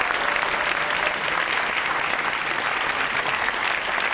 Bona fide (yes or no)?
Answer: yes